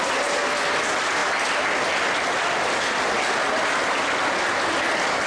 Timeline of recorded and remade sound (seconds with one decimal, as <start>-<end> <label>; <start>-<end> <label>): 0.0-5.3 recorded